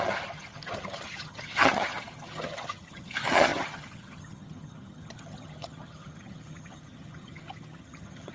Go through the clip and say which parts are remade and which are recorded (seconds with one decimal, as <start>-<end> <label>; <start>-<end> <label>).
0.0-8.3 remade